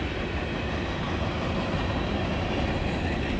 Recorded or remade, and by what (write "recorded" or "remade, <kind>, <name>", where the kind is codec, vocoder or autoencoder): recorded